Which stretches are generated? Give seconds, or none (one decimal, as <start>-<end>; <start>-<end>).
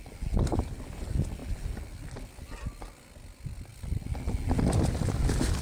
none